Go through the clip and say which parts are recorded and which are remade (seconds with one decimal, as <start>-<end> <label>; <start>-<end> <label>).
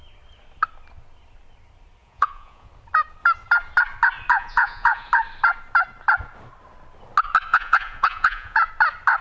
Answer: 0.0-2.0 recorded; 2.0-2.7 remade; 2.7-4.3 recorded; 4.3-5.1 remade; 5.1-7.5 recorded; 7.5-8.7 remade; 8.7-9.2 recorded